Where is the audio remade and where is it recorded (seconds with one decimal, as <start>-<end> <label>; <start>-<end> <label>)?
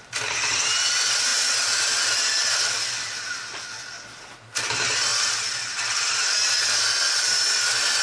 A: 0.0-8.0 recorded